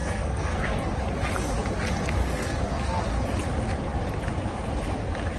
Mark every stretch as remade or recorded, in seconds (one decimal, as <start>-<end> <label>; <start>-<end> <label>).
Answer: 0.0-0.9 remade; 0.9-2.2 recorded; 2.2-3.0 remade; 3.0-5.4 recorded